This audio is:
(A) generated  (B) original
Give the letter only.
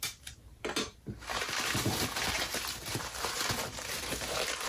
A